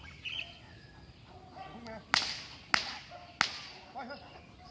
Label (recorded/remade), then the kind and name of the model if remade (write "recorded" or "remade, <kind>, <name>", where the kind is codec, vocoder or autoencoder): recorded